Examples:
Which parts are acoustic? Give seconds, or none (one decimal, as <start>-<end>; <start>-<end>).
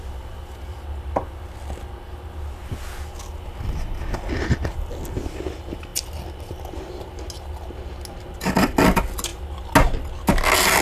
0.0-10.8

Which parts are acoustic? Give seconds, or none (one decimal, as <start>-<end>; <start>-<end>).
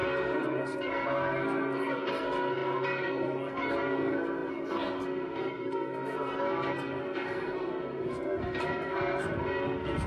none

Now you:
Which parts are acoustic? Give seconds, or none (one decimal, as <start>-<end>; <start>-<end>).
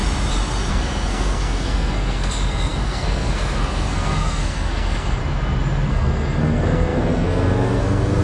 0.0-0.7; 5.2-5.9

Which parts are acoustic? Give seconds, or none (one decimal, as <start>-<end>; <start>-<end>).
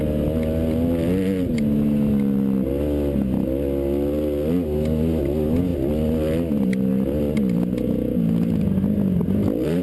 0.0-9.8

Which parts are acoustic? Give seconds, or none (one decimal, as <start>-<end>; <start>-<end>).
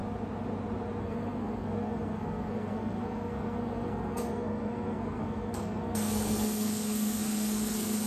0.0-1.0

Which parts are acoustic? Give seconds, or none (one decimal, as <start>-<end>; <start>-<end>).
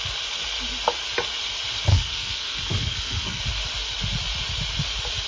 0.0-1.9; 3.4-5.3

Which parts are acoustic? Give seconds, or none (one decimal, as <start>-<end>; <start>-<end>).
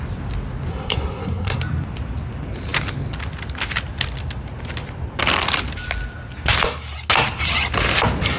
0.0-0.7; 1.6-8.4